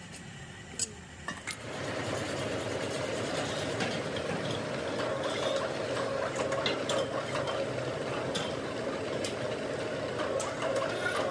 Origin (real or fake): real